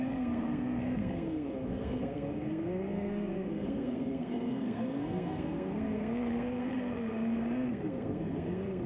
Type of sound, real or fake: fake